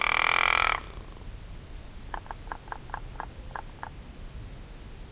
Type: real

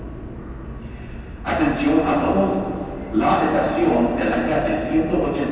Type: real